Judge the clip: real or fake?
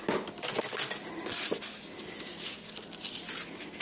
real